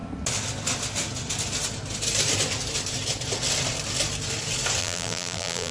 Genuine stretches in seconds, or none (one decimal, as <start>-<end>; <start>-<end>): 0.0-4.8

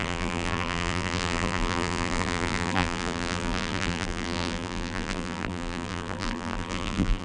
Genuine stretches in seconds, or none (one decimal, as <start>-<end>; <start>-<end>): none

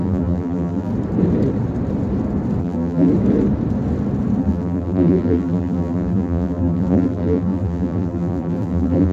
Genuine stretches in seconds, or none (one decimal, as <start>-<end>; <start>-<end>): 0.9-2.6; 3.1-4.4

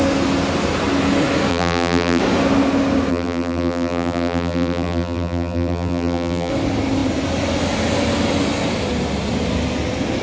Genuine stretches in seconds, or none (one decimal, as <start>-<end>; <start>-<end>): 0.0-1.5; 2.2-3.1; 6.5-10.2